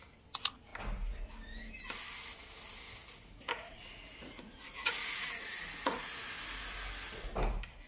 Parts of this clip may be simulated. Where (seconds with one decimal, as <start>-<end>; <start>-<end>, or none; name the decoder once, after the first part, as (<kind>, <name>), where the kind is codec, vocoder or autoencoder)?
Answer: 3.0-6.3 (vocoder, Vocos)